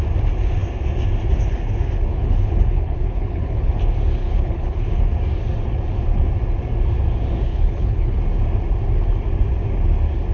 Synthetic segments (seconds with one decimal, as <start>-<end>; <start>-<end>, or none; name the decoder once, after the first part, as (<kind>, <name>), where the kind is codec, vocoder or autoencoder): 2.1-3.7 (codec, HILCodec); 4.2-5.0; 7.5-8.2

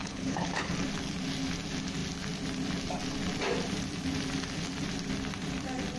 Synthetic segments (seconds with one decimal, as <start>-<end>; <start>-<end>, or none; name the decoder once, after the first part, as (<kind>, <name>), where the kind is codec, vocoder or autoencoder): 0.0-0.7 (codec, HILCodec)